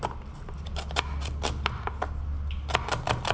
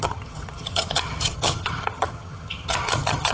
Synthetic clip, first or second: second